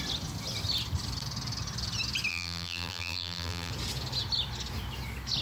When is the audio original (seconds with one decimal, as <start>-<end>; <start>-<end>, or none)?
0.0-2.3; 3.7-5.4